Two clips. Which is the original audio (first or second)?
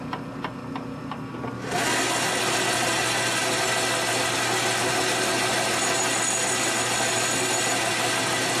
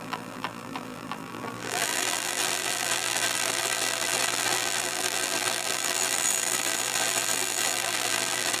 first